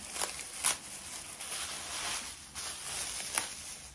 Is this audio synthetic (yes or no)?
no